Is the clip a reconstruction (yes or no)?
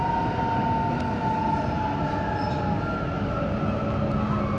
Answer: no